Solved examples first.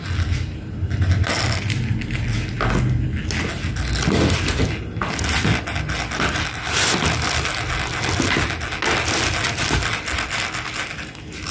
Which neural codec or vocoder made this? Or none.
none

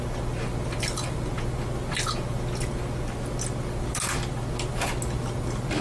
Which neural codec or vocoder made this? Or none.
none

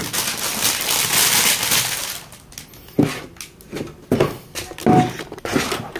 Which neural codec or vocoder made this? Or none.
none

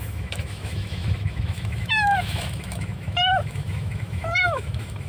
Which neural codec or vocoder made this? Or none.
autoencoder, DAC-VAE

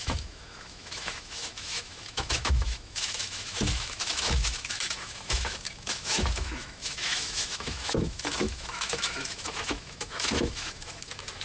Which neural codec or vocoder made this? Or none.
autoencoder, DAC-VAE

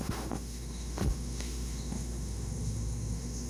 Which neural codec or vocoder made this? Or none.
autoencoder, DAC-VAE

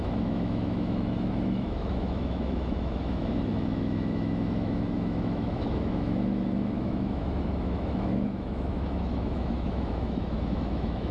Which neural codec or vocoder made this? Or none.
autoencoder, DAC-VAE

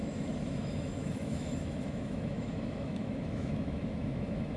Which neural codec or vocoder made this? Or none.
autoencoder, DAC-VAE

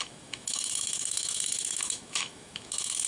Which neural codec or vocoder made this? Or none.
autoencoder, DAC-VAE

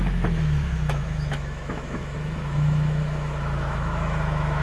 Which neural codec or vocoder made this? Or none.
autoencoder, DAC-VAE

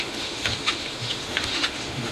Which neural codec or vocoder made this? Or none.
autoencoder, DAC-VAE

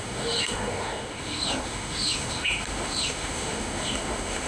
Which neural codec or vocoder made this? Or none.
autoencoder, DAC-VAE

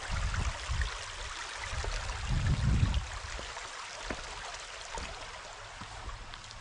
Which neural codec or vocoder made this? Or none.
none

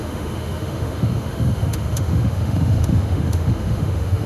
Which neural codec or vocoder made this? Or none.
autoencoder, DAC-VAE